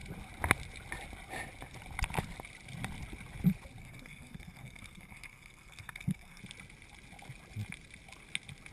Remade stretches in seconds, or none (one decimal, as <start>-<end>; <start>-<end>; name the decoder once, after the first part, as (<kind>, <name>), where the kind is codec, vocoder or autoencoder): 3.8-6.4 (codec, SNAC)